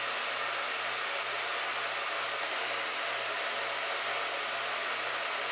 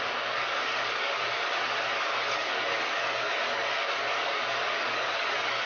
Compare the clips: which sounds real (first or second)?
first